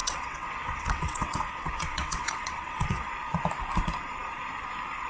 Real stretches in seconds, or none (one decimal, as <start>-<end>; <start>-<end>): 3.1-5.1